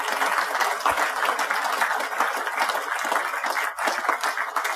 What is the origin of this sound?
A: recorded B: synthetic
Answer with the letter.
A